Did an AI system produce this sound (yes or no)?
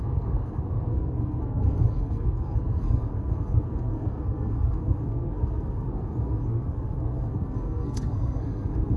yes